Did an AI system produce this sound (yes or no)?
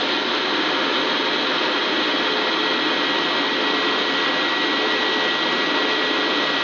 no